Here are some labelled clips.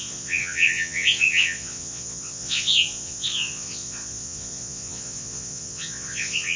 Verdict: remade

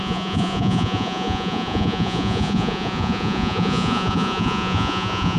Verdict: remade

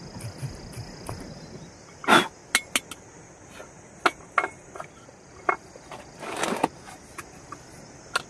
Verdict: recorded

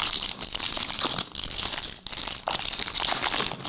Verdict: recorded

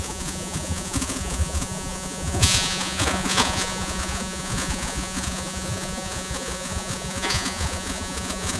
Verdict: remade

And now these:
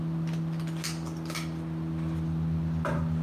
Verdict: recorded